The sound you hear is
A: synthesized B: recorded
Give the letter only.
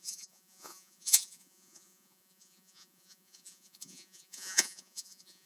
A